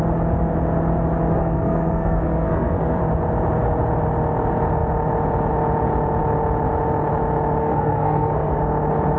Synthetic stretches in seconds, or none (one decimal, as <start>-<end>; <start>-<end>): 1.4-3.0; 7.6-8.6